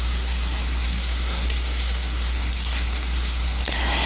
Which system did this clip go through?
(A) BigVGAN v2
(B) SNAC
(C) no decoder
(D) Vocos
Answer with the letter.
B